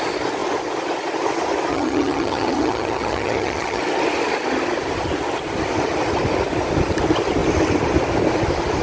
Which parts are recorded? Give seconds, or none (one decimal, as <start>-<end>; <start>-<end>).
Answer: 0.0-1.7; 3.8-8.8